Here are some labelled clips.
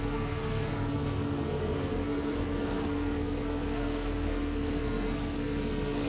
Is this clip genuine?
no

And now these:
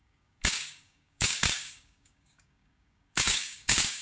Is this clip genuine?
no